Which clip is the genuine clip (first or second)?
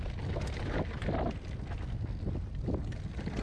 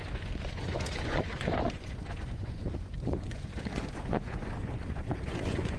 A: first